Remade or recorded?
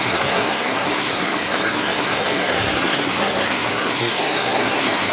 remade